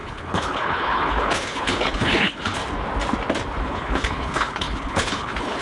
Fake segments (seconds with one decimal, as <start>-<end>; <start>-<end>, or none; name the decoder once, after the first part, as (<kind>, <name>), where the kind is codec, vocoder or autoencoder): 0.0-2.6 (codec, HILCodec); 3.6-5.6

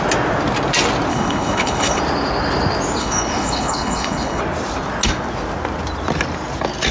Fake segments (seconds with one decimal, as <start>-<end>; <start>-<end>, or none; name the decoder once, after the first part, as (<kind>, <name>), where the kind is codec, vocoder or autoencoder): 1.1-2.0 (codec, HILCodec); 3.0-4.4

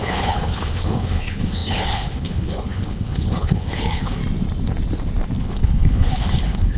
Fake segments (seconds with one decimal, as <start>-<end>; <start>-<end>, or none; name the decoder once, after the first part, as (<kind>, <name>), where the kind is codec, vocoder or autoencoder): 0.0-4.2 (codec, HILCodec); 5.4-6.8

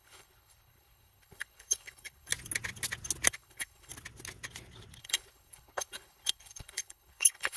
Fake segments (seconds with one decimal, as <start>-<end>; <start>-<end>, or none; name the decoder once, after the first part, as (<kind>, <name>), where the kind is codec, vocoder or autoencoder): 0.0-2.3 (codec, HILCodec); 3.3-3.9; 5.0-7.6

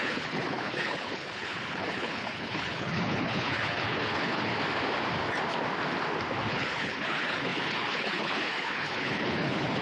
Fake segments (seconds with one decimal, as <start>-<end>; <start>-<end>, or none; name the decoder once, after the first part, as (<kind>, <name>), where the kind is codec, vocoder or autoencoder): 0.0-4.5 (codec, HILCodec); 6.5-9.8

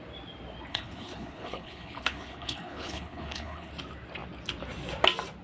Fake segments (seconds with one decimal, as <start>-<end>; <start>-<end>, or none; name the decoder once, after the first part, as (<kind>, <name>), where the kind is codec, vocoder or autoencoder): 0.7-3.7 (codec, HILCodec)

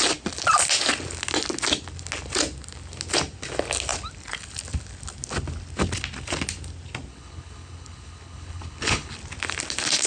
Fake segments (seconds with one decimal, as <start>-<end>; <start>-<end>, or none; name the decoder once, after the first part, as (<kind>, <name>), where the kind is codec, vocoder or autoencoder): 7.1-9.1 (codec, HILCodec)